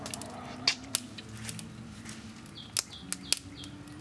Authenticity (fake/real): real